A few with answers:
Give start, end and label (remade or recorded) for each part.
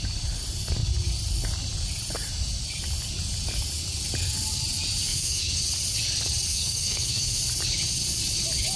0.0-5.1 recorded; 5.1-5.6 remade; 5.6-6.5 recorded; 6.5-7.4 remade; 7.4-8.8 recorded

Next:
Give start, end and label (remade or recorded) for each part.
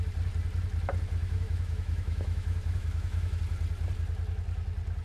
0.0-1.2 recorded; 1.2-3.4 remade; 3.4-5.0 recorded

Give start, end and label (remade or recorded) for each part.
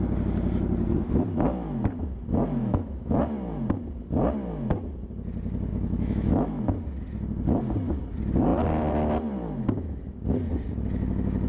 0.0-2.6 recorded; 2.6-3.2 remade; 3.2-5.7 recorded; 5.7-6.6 remade; 6.6-11.5 recorded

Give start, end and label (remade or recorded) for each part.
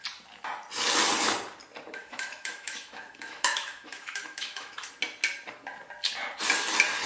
0.0-2.0 recorded; 2.0-4.9 remade; 4.9-7.1 recorded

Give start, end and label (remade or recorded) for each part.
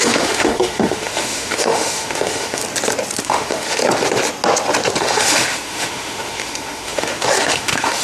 0.0-2.6 remade; 2.6-3.2 recorded; 3.2-3.8 remade; 3.8-5.0 recorded; 5.0-8.0 remade